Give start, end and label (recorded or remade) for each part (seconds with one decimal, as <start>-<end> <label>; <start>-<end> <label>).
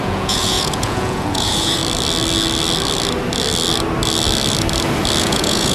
0.0-1.8 remade; 1.8-5.2 recorded; 5.2-5.7 remade